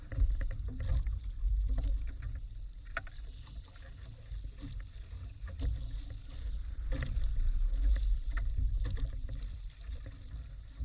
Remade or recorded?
recorded